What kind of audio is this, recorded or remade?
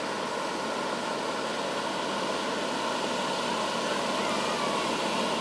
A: recorded